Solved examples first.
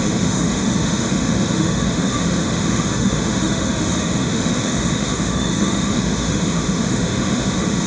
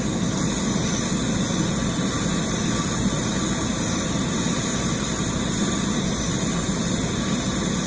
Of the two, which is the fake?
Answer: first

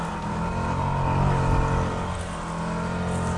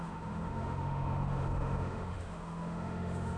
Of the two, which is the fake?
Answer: second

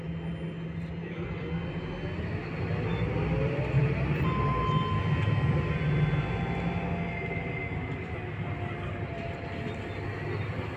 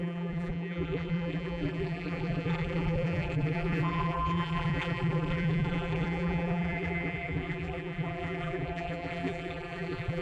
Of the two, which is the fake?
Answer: second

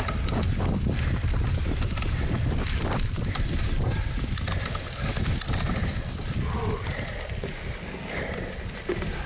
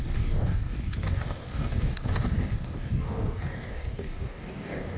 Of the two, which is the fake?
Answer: second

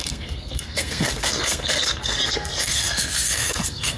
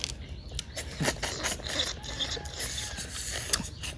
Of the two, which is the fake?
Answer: first